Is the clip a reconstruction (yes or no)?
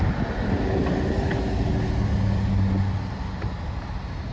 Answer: no